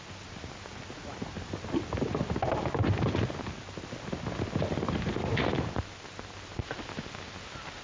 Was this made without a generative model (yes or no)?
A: yes